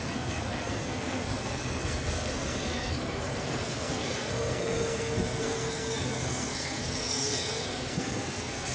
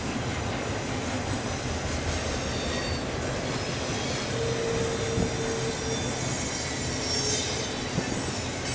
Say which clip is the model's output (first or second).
first